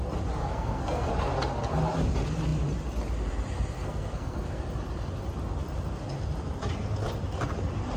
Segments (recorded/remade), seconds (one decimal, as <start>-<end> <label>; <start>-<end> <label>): 0.0-0.4 recorded; 0.4-1.1 remade; 1.1-3.8 recorded; 3.8-4.6 remade; 4.6-8.0 recorded